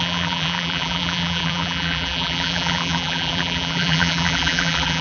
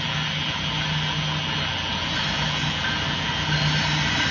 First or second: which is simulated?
first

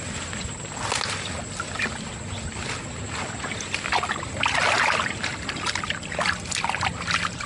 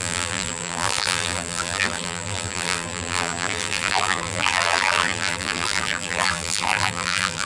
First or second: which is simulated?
second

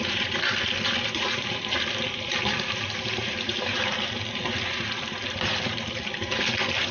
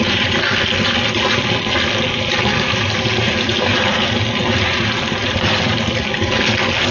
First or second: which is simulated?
first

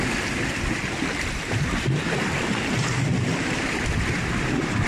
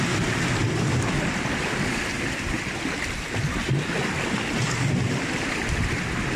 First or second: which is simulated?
first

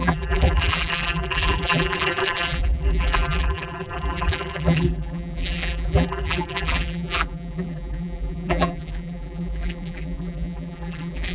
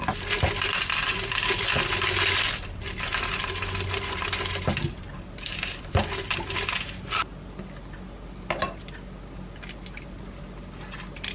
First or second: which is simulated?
first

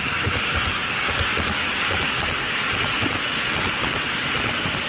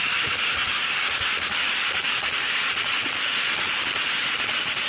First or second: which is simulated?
second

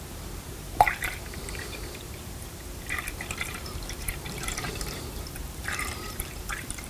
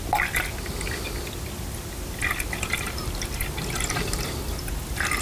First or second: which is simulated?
first